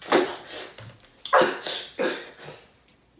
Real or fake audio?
real